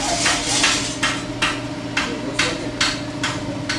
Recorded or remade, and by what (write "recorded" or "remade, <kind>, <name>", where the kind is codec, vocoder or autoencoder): recorded